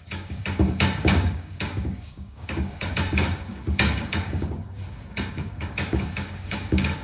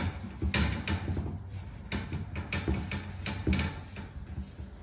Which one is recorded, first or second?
second